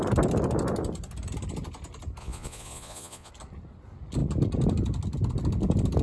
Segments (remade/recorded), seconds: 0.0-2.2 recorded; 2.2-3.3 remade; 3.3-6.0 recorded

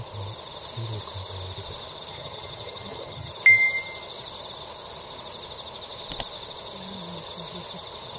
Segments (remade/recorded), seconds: 0.0-2.1 recorded; 2.1-3.3 remade; 3.3-8.2 recorded